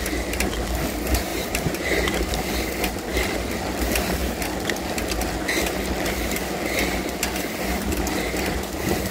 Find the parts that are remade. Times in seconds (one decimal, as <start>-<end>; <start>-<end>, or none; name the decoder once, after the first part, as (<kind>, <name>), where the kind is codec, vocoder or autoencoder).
1.3-2.3 (vocoder, BigVGAN v2)